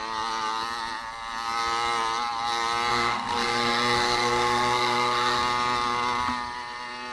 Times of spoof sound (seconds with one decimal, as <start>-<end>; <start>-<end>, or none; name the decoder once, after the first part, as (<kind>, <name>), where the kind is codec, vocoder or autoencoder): 2.9-5.4 (codec, SNAC)